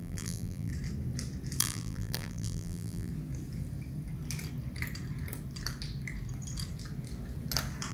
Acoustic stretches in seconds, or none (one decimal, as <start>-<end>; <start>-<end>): 0.7-1.6; 3.1-7.9